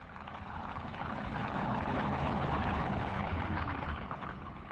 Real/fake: fake